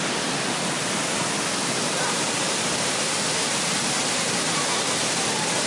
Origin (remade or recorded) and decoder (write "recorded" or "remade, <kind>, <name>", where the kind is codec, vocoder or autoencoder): recorded